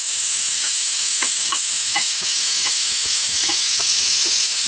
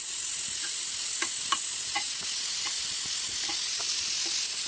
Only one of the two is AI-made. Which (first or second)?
first